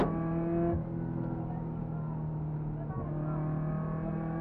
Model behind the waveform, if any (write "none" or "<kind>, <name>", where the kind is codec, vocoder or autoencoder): none